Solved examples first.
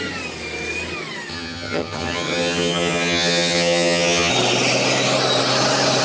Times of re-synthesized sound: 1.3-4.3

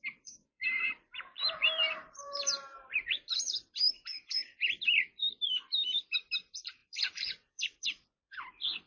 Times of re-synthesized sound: 0.0-8.9